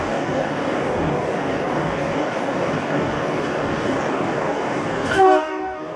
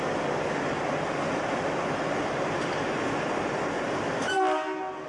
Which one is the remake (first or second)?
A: first